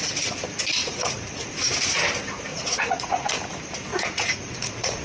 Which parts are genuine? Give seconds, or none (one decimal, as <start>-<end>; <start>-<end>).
0.0-0.8; 1.5-2.5; 3.3-3.9